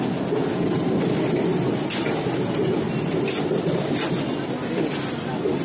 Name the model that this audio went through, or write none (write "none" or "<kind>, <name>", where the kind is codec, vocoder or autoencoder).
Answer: none